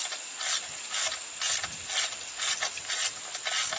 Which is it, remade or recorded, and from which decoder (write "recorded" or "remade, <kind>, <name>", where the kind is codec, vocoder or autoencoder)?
recorded